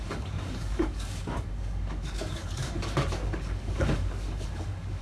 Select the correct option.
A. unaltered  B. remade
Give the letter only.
B